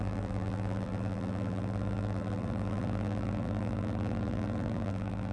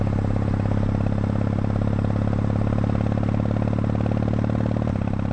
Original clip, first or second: second